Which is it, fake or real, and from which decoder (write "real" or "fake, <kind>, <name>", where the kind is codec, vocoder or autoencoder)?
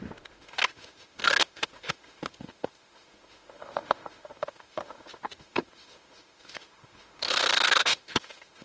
fake, autoencoder, DAC-VAE